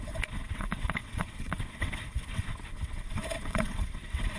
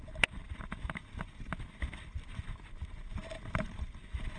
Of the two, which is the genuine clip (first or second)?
second